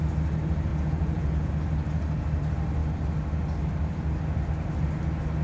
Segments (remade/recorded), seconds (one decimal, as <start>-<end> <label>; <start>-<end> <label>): 0.0-0.7 recorded; 0.7-1.5 remade; 1.5-5.4 recorded